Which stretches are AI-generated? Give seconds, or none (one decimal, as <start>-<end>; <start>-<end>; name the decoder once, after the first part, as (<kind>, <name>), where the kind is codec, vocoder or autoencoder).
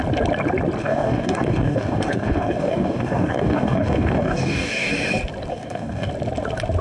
0.8-4.9 (codec, DAC); 5.5-6.1